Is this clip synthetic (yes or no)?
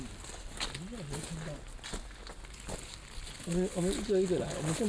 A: no